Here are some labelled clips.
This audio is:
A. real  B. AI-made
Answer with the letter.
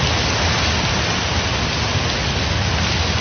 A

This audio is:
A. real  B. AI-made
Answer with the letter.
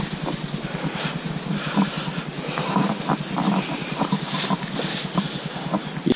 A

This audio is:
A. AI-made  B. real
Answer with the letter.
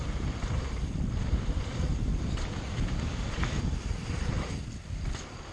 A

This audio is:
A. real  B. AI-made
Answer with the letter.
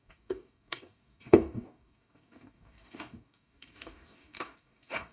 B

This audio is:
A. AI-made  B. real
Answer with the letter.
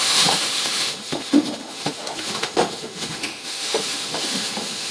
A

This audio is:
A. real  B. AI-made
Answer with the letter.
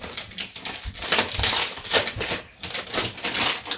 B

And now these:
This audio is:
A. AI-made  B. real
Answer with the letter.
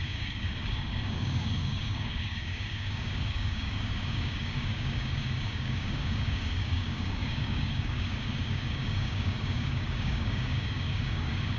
A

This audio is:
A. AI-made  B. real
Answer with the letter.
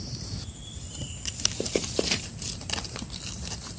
A